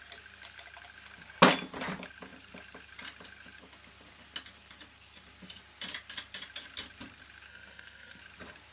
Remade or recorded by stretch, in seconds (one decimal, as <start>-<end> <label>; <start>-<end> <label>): 0.0-7.5 recorded; 7.5-8.2 remade; 8.2-8.7 recorded